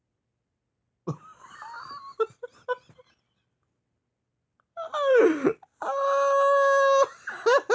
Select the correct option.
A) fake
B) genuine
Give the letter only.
B